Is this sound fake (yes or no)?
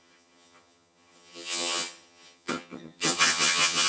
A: yes